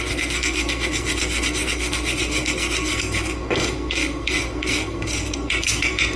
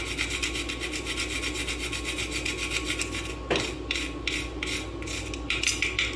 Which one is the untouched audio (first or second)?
second